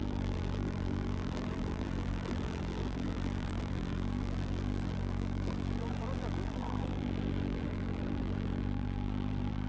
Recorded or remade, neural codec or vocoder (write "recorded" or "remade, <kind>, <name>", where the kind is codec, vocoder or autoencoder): remade, vocoder, BigVGAN v2